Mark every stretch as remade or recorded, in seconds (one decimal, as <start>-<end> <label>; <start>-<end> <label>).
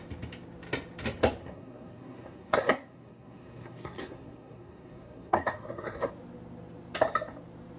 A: 0.0-1.4 recorded; 1.4-6.1 remade; 6.1-7.8 recorded